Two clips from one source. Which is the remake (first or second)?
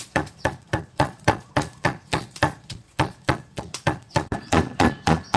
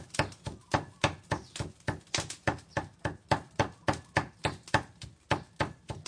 first